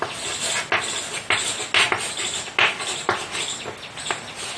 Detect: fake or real real